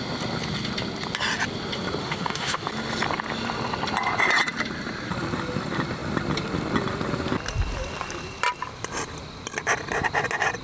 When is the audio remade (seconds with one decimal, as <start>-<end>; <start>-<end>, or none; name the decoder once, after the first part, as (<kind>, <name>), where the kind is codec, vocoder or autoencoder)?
2.0-2.7 (autoencoder, DAC-VAE)